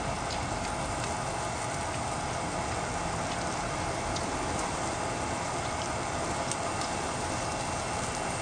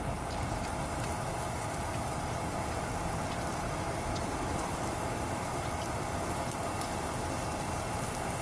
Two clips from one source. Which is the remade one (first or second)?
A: second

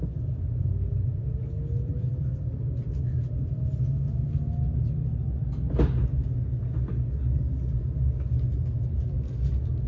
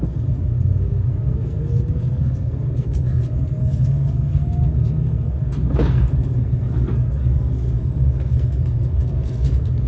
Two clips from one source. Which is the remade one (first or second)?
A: second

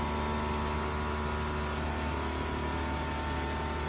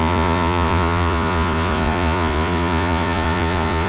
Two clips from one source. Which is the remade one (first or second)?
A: second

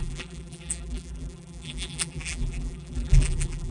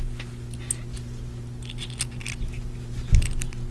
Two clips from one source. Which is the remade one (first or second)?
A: first